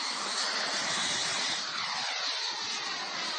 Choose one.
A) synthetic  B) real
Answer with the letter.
B